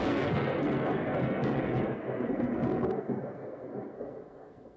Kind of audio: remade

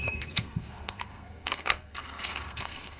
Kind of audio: remade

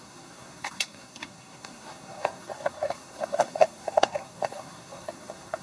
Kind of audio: remade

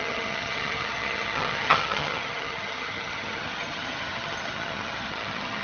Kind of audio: remade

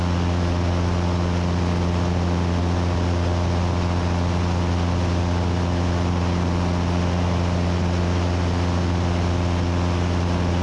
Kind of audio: recorded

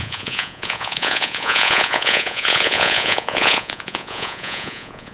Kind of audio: remade